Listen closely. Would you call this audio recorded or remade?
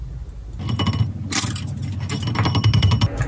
recorded